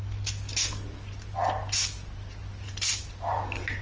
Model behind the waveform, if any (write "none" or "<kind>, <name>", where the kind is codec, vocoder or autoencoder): none